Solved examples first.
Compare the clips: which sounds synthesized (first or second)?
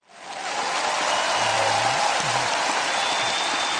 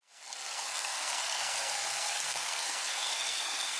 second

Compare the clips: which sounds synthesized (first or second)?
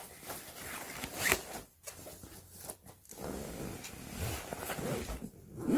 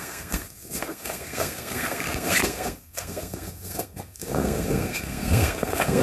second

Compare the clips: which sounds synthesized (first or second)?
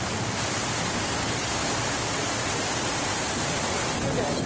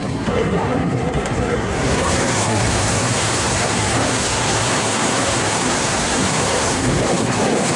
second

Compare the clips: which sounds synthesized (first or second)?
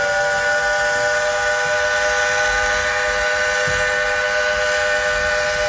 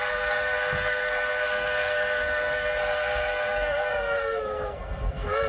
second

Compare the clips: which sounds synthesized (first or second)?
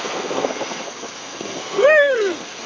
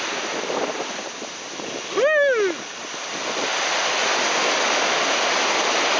first